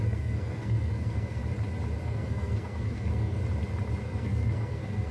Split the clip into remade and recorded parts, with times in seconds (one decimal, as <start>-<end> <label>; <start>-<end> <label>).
0.0-1.4 remade; 1.4-2.0 recorded; 2.0-3.4 remade; 3.4-4.0 recorded; 4.0-5.1 remade